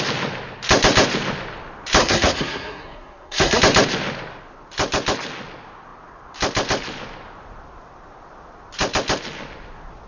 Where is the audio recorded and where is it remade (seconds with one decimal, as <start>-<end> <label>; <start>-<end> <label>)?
0.0-2.0 recorded; 2.0-3.6 remade; 3.6-10.1 recorded